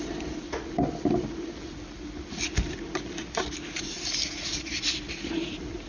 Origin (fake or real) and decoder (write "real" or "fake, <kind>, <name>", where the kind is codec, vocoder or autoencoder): real